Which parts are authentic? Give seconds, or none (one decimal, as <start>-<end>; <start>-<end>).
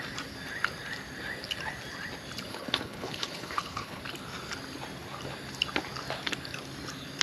0.0-2.5; 4.0-7.2